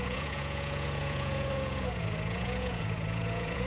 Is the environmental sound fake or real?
fake